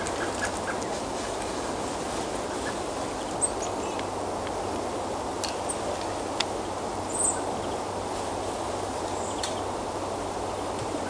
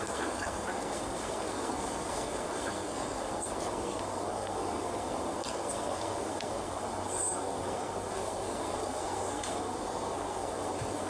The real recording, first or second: first